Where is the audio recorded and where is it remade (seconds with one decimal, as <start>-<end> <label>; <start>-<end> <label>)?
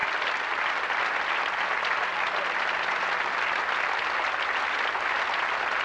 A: 0.0-5.8 recorded